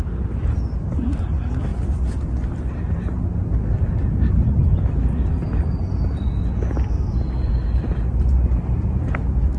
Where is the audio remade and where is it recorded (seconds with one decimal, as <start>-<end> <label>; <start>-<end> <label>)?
0.0-9.6 recorded